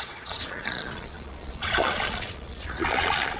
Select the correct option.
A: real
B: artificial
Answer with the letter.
B